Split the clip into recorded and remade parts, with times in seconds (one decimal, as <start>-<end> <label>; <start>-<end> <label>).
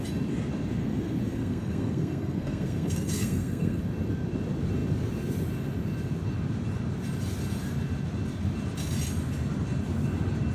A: 0.0-0.8 recorded; 0.8-3.8 remade; 3.8-10.5 recorded